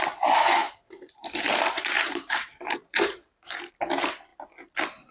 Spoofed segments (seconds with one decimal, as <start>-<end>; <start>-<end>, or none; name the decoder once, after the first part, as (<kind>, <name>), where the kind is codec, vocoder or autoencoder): 0.6-3.7 (vocoder, BigVGAN v2)